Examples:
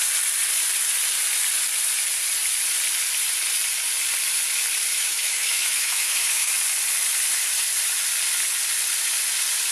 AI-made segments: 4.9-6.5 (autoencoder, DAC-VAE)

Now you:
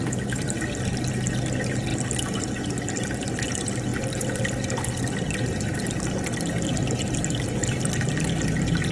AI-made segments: none

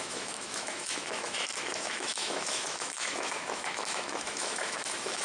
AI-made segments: 0.0-5.2 (autoencoder, DAC-VAE)

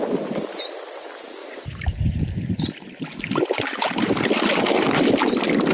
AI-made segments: none

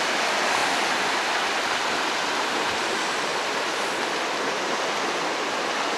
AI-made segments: none

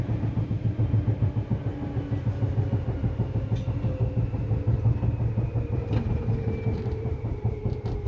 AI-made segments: 0.0-1.7 (vocoder, BigVGAN v2); 5.6-8.1